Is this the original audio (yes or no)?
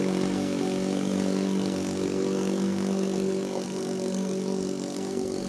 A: no